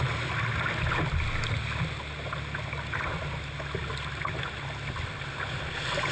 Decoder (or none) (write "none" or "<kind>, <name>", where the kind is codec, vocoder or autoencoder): none